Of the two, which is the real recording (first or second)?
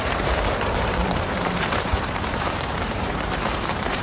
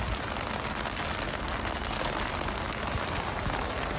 second